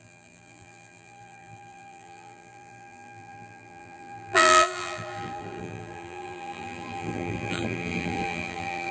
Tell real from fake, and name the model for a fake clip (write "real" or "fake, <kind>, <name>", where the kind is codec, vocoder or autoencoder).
fake, vocoder, BigVGAN v2